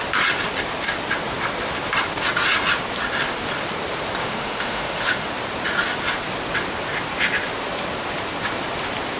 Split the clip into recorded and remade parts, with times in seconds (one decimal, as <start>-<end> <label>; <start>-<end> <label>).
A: 0.0-4.2 recorded; 4.2-5.3 remade; 5.3-9.2 recorded